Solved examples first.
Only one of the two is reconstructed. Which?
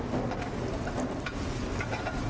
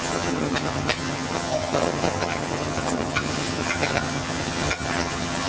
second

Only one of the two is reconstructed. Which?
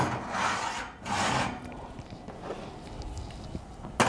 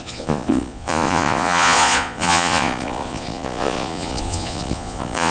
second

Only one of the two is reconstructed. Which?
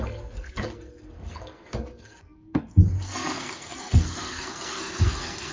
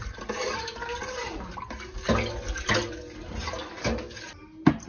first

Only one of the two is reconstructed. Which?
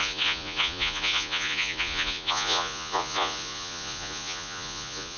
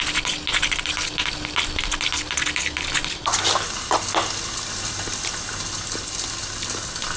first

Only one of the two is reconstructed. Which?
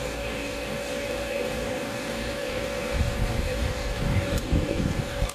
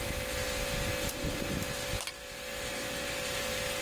first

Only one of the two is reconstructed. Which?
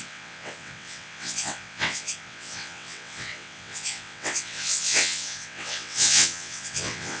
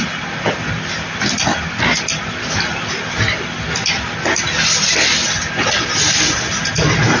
first